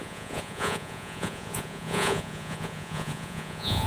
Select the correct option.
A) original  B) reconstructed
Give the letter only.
B